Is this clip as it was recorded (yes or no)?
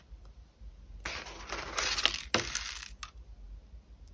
yes